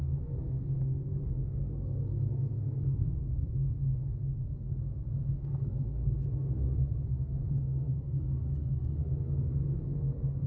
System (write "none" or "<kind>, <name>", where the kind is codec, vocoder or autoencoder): codec, SNAC